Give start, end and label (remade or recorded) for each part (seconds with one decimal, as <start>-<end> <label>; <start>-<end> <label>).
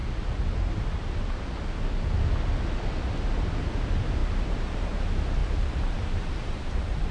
0.0-4.2 recorded; 4.2-5.0 remade; 5.0-5.4 recorded; 5.4-7.1 remade